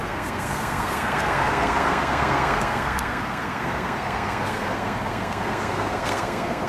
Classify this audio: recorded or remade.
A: remade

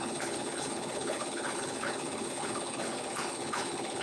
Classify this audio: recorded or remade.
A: remade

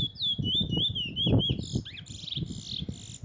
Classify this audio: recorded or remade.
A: recorded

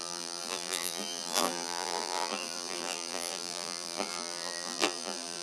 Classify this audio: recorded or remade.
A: remade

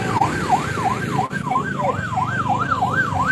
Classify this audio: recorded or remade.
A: recorded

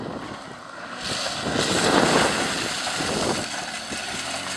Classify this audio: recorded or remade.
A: recorded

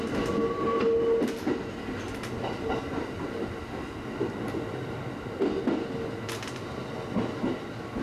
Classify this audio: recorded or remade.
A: recorded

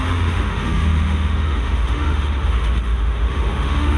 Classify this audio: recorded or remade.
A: remade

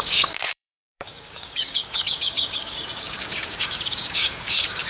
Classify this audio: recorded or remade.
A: remade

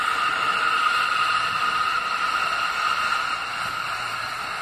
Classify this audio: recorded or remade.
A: remade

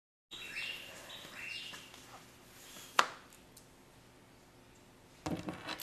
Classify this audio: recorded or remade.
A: recorded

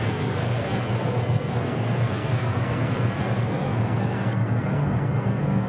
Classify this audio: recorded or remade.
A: remade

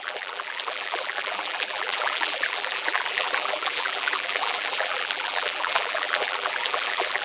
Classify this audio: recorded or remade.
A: remade